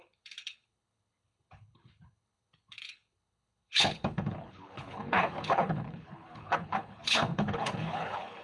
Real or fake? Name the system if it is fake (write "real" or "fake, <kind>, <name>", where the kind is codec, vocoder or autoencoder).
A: fake, codec, HILCodec